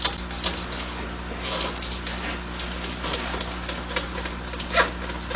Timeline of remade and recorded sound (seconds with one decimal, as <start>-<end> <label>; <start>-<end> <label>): 0.0-5.4 recorded